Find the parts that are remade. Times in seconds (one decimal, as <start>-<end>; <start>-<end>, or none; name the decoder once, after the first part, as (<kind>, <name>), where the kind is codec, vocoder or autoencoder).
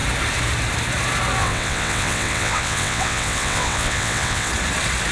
1.4-4.5 (vocoder, WaveNeXt)